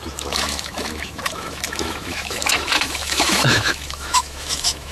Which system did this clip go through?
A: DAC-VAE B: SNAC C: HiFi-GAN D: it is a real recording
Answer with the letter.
A